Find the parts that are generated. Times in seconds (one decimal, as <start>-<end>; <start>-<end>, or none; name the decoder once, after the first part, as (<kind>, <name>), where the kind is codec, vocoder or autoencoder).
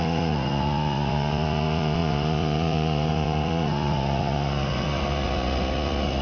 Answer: 0.0-6.2 (vocoder, Vocos)